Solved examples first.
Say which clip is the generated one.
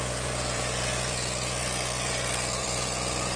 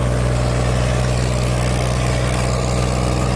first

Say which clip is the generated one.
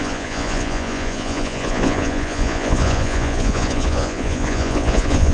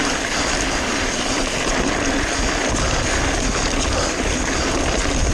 first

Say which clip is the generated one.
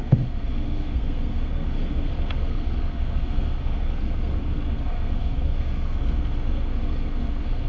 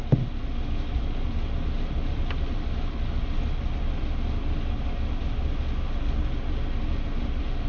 first